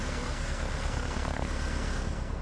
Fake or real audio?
fake